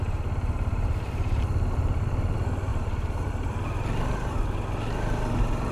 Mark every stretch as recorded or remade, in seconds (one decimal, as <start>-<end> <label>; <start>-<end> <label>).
0.0-2.7 recorded; 2.7-3.3 remade; 3.3-5.7 recorded